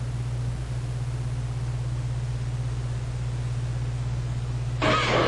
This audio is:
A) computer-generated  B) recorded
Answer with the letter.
B